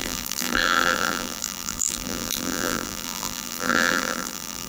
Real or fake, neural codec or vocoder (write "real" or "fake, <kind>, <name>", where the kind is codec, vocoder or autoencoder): fake, vocoder, BigVGAN v2